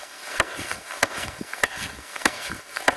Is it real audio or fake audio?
fake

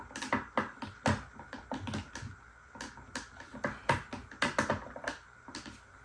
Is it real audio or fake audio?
real